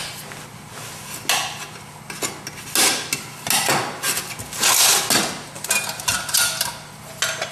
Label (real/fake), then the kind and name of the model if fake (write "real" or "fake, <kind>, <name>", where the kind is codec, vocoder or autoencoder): real